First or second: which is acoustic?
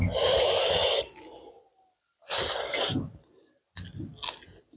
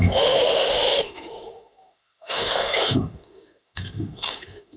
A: first